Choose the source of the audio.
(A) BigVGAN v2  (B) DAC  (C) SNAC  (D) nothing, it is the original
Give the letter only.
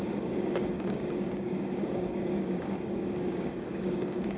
B